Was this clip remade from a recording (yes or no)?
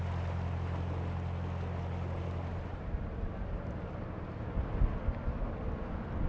no